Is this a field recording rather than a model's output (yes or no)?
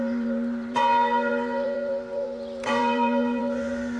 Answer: no